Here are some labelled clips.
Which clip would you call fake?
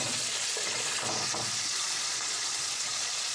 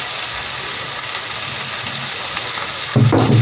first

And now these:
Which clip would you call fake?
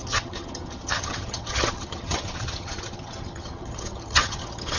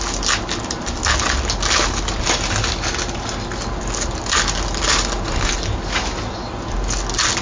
first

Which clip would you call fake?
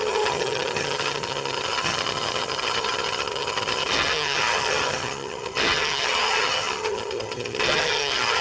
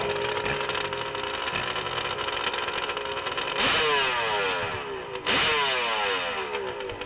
first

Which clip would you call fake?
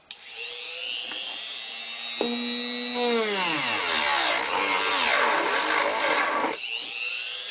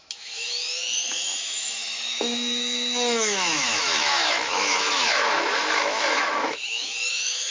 second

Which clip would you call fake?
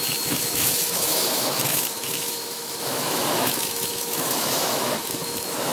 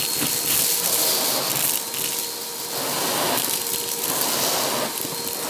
first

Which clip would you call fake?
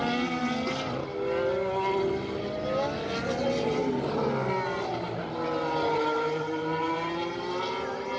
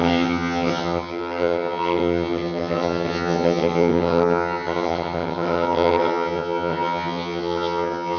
second